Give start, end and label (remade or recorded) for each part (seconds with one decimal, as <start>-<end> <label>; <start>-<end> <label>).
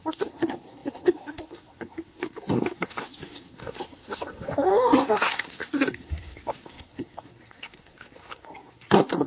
0.0-9.3 remade